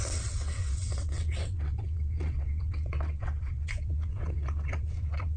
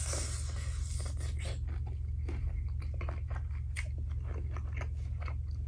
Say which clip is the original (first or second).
second